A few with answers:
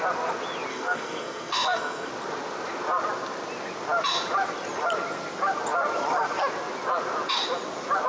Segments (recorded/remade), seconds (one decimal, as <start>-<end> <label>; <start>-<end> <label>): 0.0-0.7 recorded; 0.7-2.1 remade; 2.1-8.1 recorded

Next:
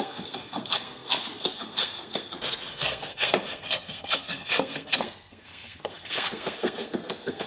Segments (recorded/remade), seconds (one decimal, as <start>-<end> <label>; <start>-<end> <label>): 0.0-7.5 remade

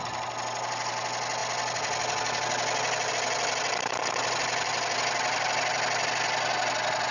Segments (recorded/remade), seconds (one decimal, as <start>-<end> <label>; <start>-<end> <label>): 0.0-7.1 recorded

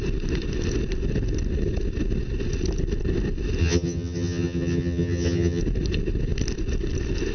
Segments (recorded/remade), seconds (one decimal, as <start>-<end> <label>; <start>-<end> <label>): 0.0-3.6 recorded; 3.6-5.6 remade; 5.6-7.3 recorded